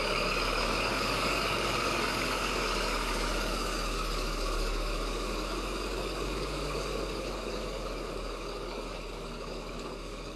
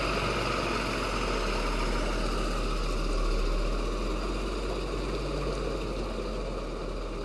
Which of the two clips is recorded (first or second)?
second